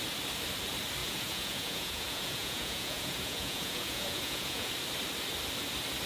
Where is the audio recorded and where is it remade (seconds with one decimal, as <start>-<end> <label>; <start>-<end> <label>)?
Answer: 0.0-1.0 recorded; 1.0-4.7 remade; 4.7-6.1 recorded